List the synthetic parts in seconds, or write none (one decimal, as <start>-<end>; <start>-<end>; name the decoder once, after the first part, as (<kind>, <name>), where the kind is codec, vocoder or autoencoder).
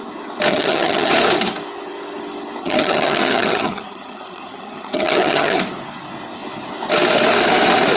0.5-1.1 (vocoder, HiFi-GAN); 2.6-5.6